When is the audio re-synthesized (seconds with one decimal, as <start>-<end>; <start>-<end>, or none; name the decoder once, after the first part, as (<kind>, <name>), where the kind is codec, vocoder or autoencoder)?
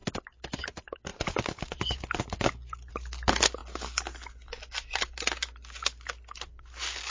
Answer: none